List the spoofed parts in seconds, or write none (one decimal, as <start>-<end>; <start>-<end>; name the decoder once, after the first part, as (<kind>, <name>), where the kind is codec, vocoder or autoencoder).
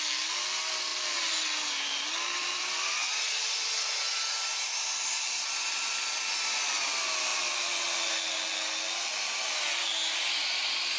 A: none